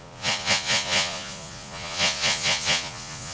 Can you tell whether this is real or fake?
fake